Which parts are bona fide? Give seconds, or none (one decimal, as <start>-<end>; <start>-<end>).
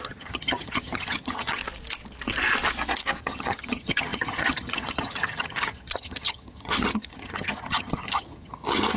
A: 1.6-3.2